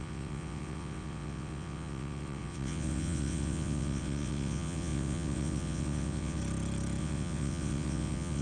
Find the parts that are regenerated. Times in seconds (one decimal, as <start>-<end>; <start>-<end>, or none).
0.0-6.4; 7.0-8.4